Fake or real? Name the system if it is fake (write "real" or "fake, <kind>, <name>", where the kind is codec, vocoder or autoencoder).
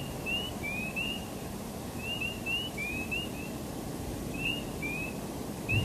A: fake, vocoder, BigVGAN v2